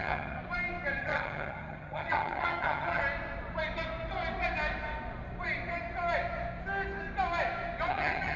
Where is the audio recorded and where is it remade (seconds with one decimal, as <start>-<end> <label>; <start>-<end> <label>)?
0.0-0.4 remade; 0.4-1.0 recorded; 1.0-3.0 remade; 3.0-7.9 recorded; 7.9-8.4 remade